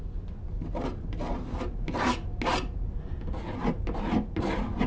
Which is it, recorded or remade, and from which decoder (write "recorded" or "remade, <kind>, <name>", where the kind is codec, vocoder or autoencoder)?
recorded